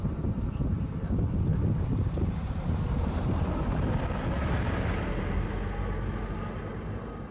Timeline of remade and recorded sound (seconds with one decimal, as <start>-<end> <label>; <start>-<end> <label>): 0.0-1.5 recorded; 1.5-4.0 remade; 4.0-4.4 recorded; 4.4-5.0 remade; 5.0-7.3 recorded